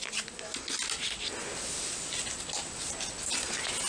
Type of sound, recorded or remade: recorded